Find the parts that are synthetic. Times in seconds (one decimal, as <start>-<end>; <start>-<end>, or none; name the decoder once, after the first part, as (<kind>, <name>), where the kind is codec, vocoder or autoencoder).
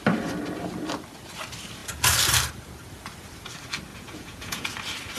3.9-4.7 (vocoder, Vocos)